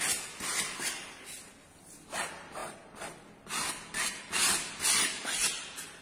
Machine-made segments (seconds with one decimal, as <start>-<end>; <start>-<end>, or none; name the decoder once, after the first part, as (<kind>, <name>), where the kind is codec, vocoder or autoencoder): 2.6-3.1 (vocoder, BigVGAN v2); 4.4-6.0